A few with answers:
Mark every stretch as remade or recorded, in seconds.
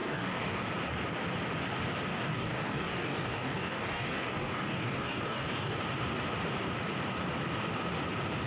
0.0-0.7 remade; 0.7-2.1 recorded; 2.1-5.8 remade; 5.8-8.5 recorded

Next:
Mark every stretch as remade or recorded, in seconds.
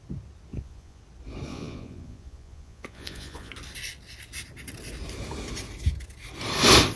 0.0-0.5 recorded; 0.5-1.0 remade; 1.0-1.5 recorded; 1.5-3.5 remade; 3.5-7.0 recorded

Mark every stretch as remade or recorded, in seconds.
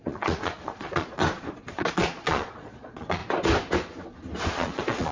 0.0-1.2 remade; 1.2-1.7 recorded; 1.7-3.2 remade; 3.2-4.5 recorded; 4.5-5.1 remade